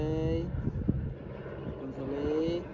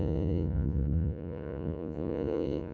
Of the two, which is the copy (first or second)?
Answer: second